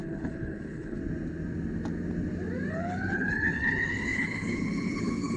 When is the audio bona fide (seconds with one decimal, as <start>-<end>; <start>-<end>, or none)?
1.0-2.7